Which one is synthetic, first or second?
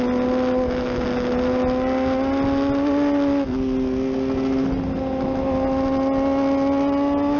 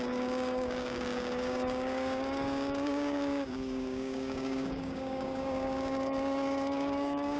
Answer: second